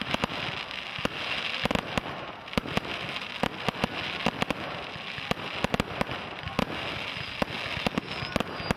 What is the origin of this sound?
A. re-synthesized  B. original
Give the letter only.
B